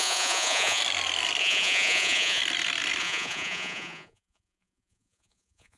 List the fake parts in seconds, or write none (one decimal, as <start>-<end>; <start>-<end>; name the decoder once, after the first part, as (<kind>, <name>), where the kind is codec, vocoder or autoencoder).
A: 0.0-0.8 (vocoder, Vocos); 1.4-2.4; 3.0-5.8